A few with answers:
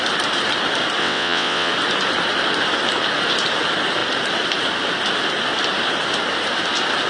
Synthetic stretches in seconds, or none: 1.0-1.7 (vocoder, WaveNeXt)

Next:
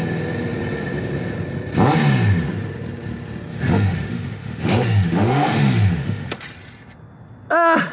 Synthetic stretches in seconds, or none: 3.5-6.3 (autoencoder, DAC-VAE)

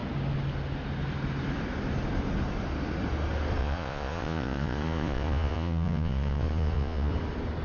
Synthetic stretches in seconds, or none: 3.6-7.1 (vocoder, Vocos)

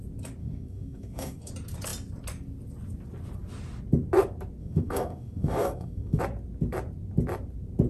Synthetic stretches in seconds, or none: 0.4-1.5 (codec, DAC); 4.6-6.2

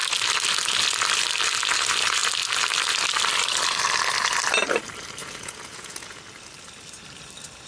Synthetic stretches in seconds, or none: 5.2-6.2 (vocoder, Vocos)